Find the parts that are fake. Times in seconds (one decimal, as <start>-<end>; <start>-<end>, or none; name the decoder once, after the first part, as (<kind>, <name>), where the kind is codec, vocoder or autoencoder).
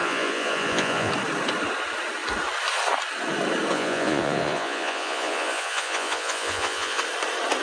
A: 0.0-1.1 (vocoder, Vocos); 3.7-7.0